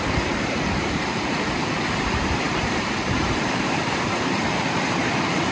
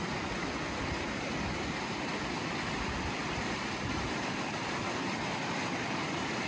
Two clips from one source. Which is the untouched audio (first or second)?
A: second